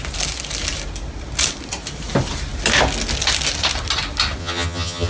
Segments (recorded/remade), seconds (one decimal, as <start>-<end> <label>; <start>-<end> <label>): 0.0-4.4 recorded; 4.4-5.1 remade